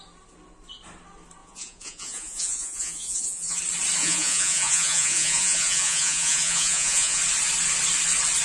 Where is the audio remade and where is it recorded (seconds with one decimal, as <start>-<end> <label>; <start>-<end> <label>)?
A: 0.0-1.4 recorded; 1.4-3.6 remade; 3.6-4.0 recorded; 4.0-7.2 remade; 7.2-8.4 recorded